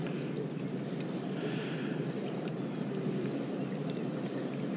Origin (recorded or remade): recorded